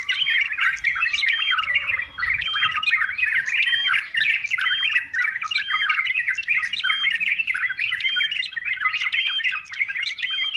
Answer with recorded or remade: remade